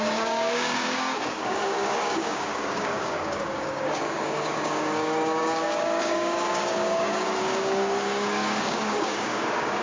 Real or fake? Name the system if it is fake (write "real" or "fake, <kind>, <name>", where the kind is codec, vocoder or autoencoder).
fake, codec, DAC